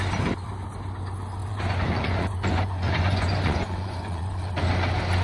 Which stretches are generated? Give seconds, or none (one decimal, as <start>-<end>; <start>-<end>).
1.4-4.5